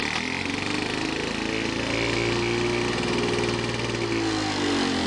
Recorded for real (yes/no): yes